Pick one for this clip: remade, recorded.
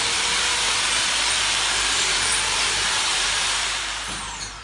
remade